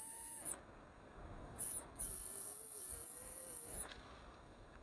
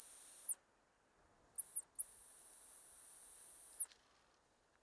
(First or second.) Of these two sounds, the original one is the second